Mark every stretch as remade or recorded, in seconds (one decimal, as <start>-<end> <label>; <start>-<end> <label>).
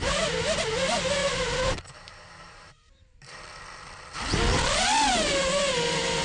0.0-1.2 recorded; 1.2-3.4 remade; 3.4-6.2 recorded